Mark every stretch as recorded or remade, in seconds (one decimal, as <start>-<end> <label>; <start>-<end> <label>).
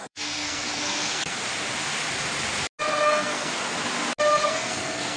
0.0-1.4 remade; 1.4-2.8 recorded; 2.8-3.5 remade; 3.5-4.4 recorded; 4.4-5.2 remade